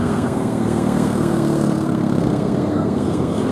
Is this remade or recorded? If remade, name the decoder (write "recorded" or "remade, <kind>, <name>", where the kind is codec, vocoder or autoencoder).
remade, codec, SNAC